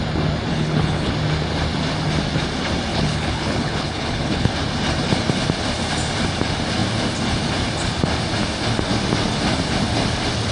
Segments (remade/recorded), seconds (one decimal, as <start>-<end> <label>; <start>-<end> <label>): 0.0-0.5 recorded; 0.5-1.1 remade; 1.1-2.9 recorded; 2.9-4.5 remade; 4.5-10.5 recorded